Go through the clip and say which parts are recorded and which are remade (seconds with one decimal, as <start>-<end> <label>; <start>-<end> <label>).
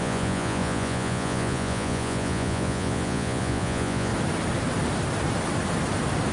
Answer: 0.0-4.1 remade; 4.1-6.3 recorded